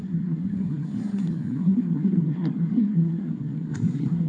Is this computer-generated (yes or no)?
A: yes